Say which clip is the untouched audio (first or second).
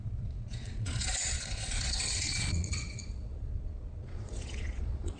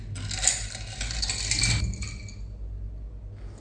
second